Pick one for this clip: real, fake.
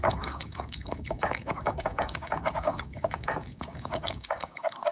fake